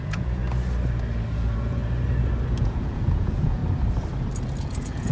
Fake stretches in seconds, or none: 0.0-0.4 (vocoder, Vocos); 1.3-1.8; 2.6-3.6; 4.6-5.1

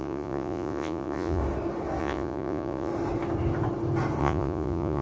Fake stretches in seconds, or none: 0.0-1.4 (vocoder, Vocos); 2.0-2.9; 4.2-5.0

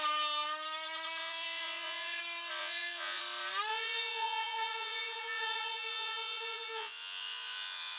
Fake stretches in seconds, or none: 1.2-2.2 (vocoder, Vocos); 2.6-3.2; 3.7-8.0

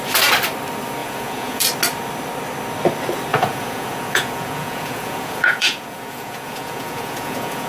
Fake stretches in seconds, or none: 1.0-1.7 (vocoder, Vocos); 3.3-7.7

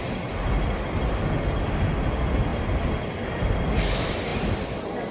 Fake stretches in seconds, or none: none

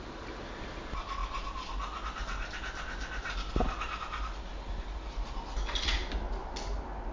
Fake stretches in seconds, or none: none